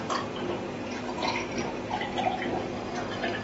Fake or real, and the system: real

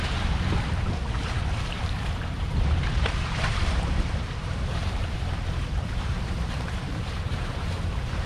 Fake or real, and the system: fake, vocoder, BigVGAN v2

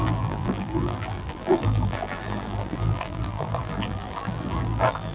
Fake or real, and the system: fake, vocoder, BigVGAN v2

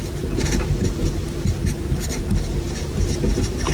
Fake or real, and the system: real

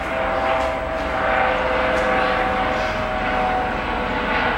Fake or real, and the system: real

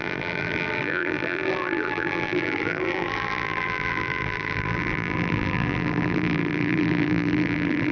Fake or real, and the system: fake, vocoder, BigVGAN v2